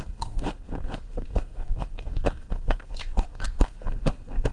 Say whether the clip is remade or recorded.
remade